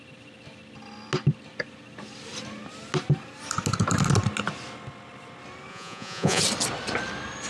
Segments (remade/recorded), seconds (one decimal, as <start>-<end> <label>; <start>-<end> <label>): 0.0-5.7 recorded; 5.7-6.4 remade; 6.4-7.5 recorded